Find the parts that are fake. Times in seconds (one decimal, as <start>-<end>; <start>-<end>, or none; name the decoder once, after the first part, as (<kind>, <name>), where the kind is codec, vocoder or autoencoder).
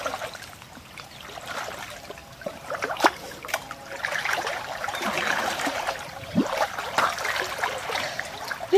2.2-6.7 (vocoder, BigVGAN v2)